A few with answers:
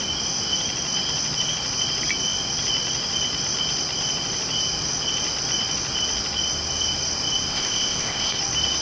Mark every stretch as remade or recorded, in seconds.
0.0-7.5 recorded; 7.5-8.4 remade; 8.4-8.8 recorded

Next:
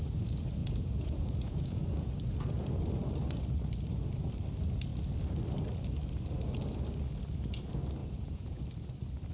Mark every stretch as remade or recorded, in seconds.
0.0-0.6 recorded; 0.6-2.1 remade; 2.1-8.0 recorded; 8.0-8.6 remade; 8.6-9.3 recorded

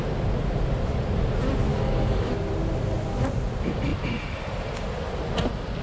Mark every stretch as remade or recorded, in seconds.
0.0-1.7 recorded; 1.7-2.3 remade; 2.3-5.8 recorded

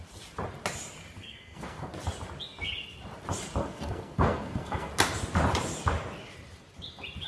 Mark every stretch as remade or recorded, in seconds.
0.0-1.2 recorded; 1.2-1.9 remade; 1.9-3.6 recorded; 3.6-4.9 remade; 4.9-7.3 recorded

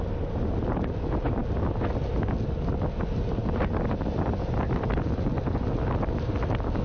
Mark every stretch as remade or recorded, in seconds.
0.0-6.8 recorded

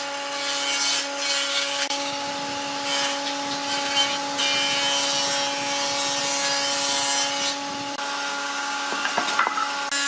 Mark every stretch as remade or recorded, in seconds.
0.0-1.5 recorded; 1.5-2.3 remade; 2.3-8.3 recorded; 8.3-9.1 remade; 9.1-10.1 recorded

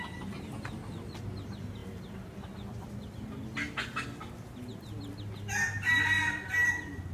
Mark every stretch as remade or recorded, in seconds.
0.0-7.1 recorded